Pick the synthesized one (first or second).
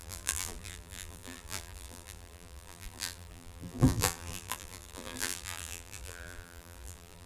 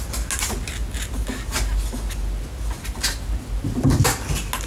first